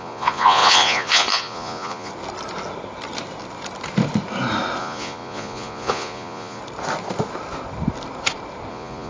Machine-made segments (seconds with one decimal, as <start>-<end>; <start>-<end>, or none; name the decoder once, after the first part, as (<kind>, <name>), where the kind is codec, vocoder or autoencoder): 0.0-2.1 (vocoder, Vocos); 4.8-6.6; 8.7-9.1